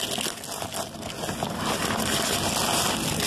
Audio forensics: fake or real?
real